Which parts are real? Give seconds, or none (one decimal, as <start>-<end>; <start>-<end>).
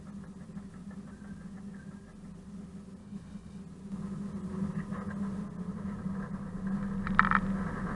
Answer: 0.0-3.0; 3.6-8.0